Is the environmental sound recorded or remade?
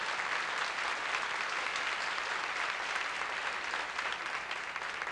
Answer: recorded